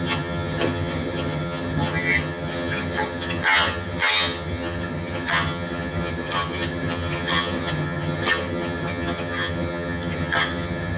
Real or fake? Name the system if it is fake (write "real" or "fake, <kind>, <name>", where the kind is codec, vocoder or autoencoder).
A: fake, vocoder, HiFi-GAN